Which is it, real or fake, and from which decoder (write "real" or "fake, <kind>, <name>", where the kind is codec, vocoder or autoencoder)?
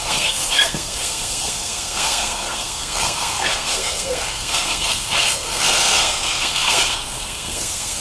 fake, codec, SNAC